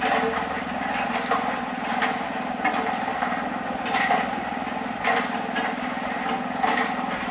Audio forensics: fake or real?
real